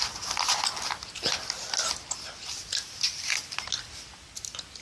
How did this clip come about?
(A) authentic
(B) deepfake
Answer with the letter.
A